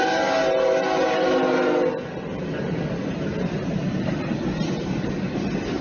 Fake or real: real